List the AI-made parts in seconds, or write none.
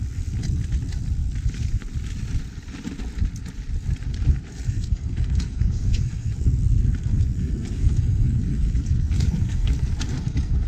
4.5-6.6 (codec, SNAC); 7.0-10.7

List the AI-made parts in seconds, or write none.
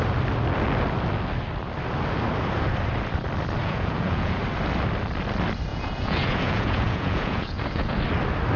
3.6-4.4 (vocoder, Vocos); 5.7-8.0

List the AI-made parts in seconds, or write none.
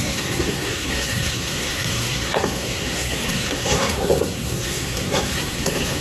0.0-6.0 (codec, SNAC)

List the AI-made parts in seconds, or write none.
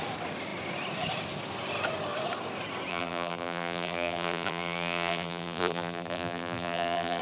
2.9-7.2 (vocoder, BigVGAN v2)